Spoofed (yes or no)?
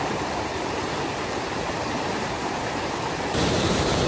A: yes